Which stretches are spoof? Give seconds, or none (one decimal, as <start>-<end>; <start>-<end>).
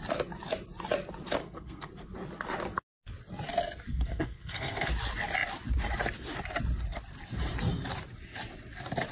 1.4-1.9; 3.9-4.9